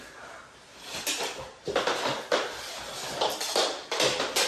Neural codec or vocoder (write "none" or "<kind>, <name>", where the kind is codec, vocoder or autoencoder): none